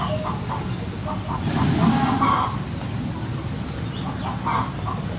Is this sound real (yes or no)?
yes